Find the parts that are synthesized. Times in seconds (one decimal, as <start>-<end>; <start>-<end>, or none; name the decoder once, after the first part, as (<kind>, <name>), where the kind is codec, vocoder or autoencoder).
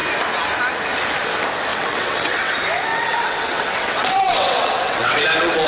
1.7-2.5 (vocoder, WaveNeXt); 2.9-5.2